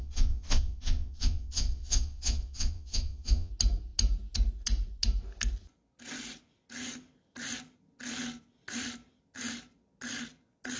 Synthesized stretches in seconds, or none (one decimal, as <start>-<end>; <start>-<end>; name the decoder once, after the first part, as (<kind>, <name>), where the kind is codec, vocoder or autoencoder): 0.0-3.5 (vocoder, Vocos)